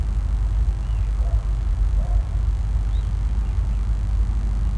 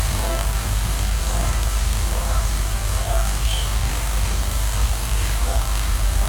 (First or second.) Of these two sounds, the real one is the first